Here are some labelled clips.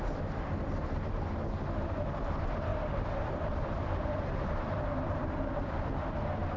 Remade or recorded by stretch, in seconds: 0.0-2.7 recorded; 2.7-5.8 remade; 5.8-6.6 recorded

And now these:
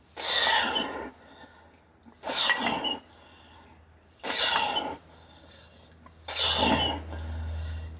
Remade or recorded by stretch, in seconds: 0.0-8.0 recorded

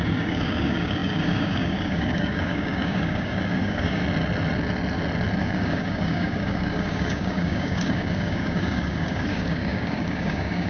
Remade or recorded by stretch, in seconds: 0.0-4.0 remade; 4.0-5.4 recorded; 5.4-10.7 remade

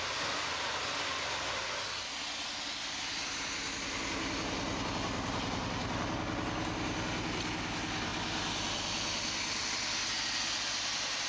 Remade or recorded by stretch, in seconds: 0.0-11.3 recorded

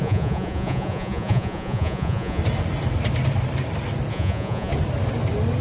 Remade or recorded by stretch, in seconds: 0.0-2.4 remade; 2.4-4.1 recorded; 4.1-4.7 remade; 4.7-5.6 recorded

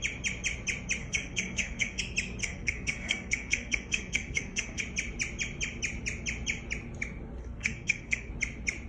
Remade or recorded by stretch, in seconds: 0.0-1.0 recorded; 1.0-2.0 remade; 2.0-2.4 recorded; 2.4-4.8 remade; 4.8-7.4 recorded; 7.4-8.3 remade; 8.3-8.9 recorded

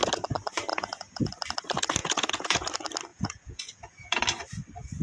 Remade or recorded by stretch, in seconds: 0.0-0.7 recorded; 0.7-1.3 remade; 1.3-2.0 recorded; 2.0-2.7 remade; 2.7-3.1 recorded; 3.1-4.2 remade; 4.2-5.0 recorded

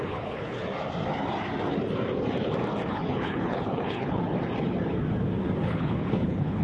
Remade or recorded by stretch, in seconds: 0.0-0.6 remade; 0.6-2.9 recorded; 2.9-4.2 remade; 4.2-5.6 recorded; 5.6-6.6 remade